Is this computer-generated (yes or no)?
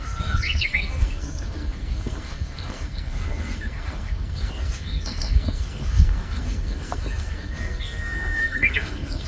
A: yes